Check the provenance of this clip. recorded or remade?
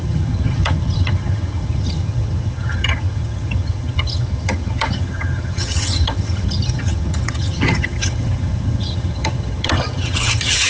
remade